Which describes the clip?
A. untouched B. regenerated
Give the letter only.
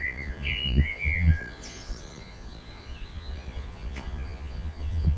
B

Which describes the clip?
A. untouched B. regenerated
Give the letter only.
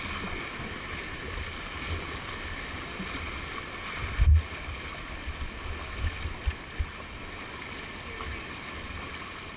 A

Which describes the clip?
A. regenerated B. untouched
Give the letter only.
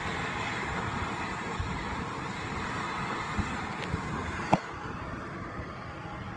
B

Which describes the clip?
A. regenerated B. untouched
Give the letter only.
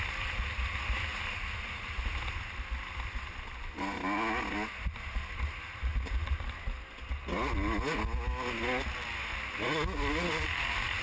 B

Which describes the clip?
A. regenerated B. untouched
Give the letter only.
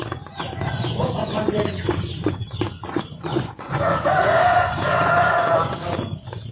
A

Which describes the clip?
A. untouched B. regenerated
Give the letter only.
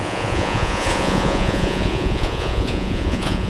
B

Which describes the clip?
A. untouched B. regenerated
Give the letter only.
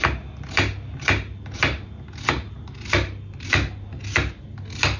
A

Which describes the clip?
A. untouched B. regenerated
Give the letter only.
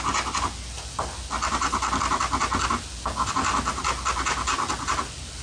A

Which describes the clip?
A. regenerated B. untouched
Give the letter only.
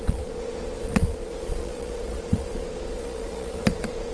A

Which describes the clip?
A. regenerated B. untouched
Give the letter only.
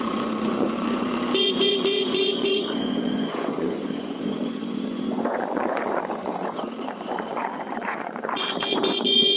A